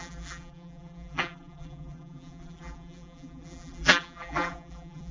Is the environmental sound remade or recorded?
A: remade